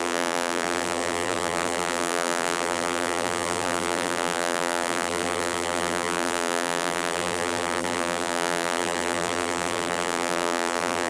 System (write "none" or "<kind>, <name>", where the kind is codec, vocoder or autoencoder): vocoder, BigVGAN v2